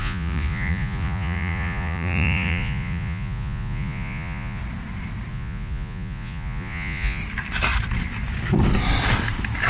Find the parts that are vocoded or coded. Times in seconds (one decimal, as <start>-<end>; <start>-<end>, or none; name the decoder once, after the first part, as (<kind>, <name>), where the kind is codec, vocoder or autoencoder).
0.0-4.6 (vocoder, Vocos); 5.3-7.2